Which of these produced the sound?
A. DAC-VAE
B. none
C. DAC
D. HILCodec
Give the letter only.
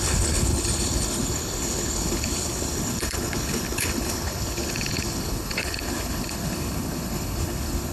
D